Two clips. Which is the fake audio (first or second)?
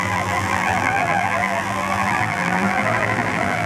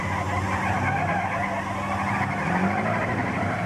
first